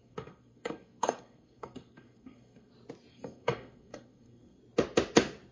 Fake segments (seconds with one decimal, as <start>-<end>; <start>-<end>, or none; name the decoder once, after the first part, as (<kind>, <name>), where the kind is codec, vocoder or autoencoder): 0.0-2.7 (codec, SNAC); 3.1-4.6